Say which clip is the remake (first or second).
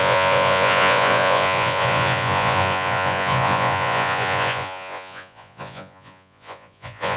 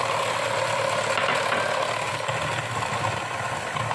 first